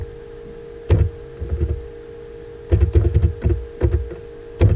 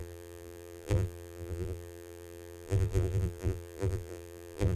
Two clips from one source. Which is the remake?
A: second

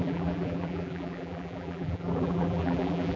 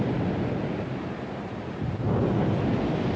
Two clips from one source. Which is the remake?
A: first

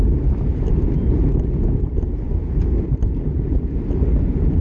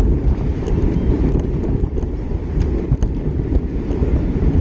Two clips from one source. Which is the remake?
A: second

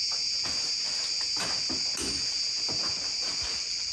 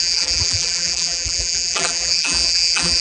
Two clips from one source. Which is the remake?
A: second